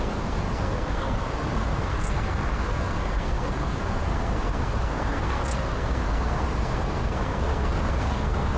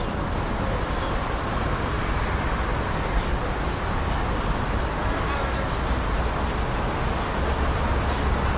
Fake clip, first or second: first